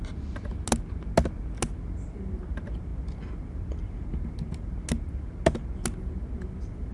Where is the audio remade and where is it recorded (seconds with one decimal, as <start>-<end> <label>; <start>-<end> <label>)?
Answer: 0.0-6.9 recorded